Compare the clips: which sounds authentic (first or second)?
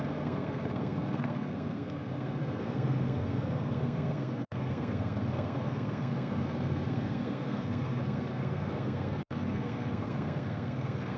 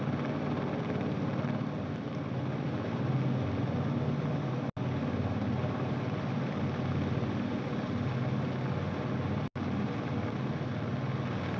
second